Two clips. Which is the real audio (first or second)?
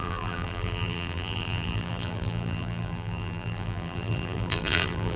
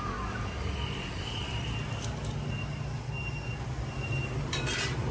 second